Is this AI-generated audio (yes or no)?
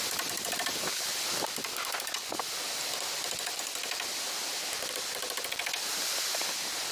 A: no